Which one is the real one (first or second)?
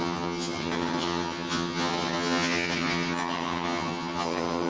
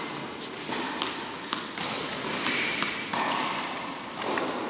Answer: second